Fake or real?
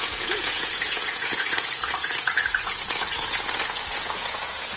fake